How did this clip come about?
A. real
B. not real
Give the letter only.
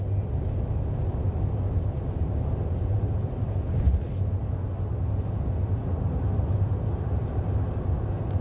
A